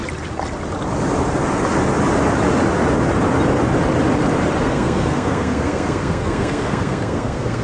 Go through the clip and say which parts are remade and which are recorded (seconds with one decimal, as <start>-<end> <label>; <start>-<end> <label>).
0.0-4.6 recorded; 4.6-7.6 remade